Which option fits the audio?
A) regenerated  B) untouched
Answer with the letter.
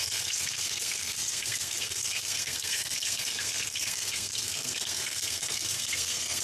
A